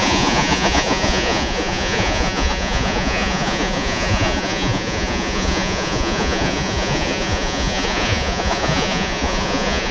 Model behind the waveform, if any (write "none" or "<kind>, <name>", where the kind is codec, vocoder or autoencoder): vocoder, Vocos